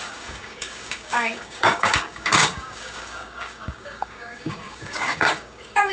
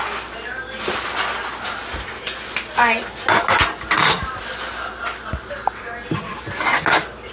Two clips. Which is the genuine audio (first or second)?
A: second